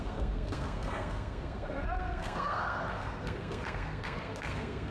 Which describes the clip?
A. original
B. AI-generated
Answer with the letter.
B